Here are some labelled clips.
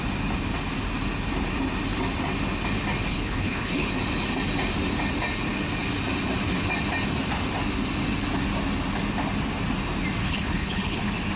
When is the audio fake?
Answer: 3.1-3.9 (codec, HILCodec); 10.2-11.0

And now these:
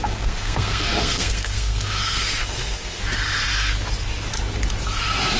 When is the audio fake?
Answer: 0.0-3.0 (codec, SNAC)

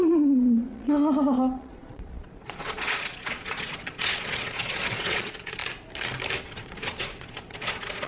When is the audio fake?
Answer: 0.0-5.6 (vocoder, Vocos); 6.4-8.1

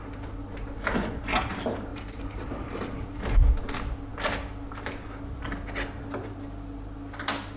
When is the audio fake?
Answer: 1.9-3.2 (vocoder, BigVGAN v2)